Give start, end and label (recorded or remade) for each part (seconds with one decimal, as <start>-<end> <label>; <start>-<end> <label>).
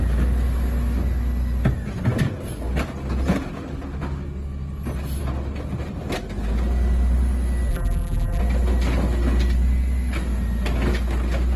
0.0-7.7 recorded; 7.7-8.4 remade; 8.4-11.6 recorded